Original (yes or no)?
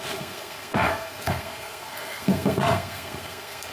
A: no